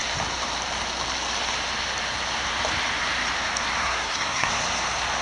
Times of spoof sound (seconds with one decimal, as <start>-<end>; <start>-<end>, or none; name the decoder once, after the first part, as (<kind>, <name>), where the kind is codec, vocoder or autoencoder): 3.8-4.5 (codec, SNAC)